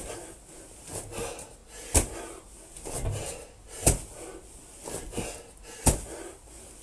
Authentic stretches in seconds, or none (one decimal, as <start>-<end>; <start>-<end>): 0.0-6.8